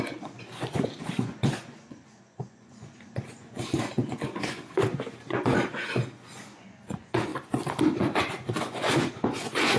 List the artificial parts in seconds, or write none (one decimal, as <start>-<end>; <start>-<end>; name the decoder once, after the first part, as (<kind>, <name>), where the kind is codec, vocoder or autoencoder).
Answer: 0.0-7.3 (vocoder, Vocos); 8.0-9.8